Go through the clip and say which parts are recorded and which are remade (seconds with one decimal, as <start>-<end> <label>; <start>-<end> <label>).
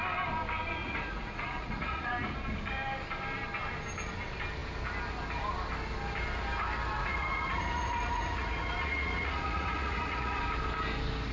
0.0-0.8 recorded; 0.8-2.1 remade; 2.1-7.0 recorded; 7.0-10.4 remade; 10.4-11.3 recorded